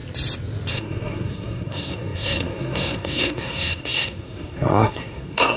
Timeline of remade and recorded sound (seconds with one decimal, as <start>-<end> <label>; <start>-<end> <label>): 0.0-0.7 recorded; 0.7-5.6 remade

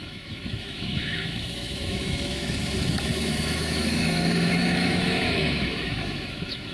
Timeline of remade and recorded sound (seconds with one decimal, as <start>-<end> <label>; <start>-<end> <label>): 0.0-6.7 remade

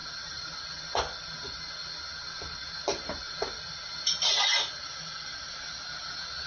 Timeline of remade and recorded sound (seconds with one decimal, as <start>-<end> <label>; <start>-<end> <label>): 0.0-0.6 remade; 0.6-6.5 recorded